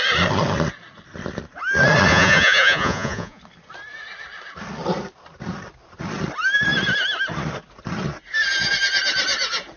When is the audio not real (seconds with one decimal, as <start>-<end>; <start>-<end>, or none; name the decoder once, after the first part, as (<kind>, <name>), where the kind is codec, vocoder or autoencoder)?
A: 2.1-3.4 (vocoder, Vocos)